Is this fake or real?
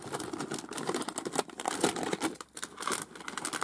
real